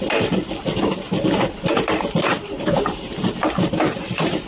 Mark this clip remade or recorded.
remade